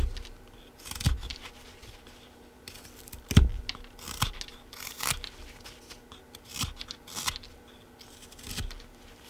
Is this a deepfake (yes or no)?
no